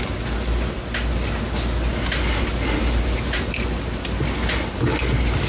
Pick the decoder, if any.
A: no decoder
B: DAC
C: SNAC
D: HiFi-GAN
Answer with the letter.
A